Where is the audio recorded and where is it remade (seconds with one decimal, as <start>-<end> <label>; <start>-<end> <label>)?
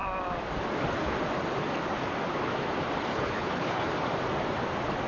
0.0-3.1 recorded; 3.1-3.9 remade; 3.9-5.1 recorded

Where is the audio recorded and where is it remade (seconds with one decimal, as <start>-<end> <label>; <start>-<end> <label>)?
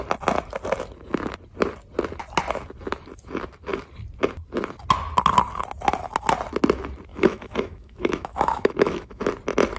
0.0-7.1 recorded; 7.1-9.3 remade; 9.3-9.8 recorded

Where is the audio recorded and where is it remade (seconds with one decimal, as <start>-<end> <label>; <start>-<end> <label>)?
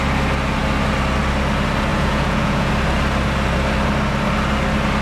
0.0-1.9 recorded; 1.9-2.7 remade; 2.7-5.0 recorded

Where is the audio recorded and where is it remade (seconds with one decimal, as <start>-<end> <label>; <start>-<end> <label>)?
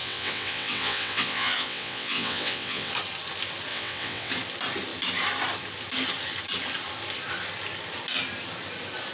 0.0-2.9 remade; 2.9-3.7 recorded; 3.7-4.3 remade; 4.3-9.1 recorded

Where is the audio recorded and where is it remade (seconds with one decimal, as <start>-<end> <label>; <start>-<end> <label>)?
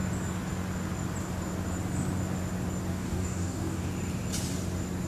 0.0-2.9 recorded; 2.9-3.9 remade; 3.9-5.1 recorded